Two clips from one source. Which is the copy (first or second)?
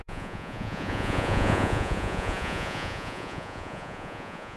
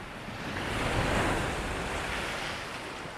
first